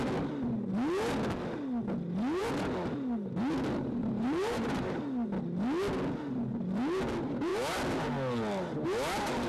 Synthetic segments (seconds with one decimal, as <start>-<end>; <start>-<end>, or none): 4.0-5.0